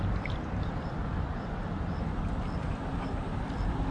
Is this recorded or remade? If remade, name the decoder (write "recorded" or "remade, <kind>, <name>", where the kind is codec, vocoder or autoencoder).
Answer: recorded